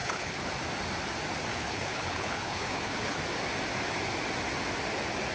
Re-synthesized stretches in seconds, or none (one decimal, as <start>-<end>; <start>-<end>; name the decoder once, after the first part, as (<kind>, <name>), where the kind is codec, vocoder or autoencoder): 0.0-0.5 (codec, HILCodec); 1.5-3.2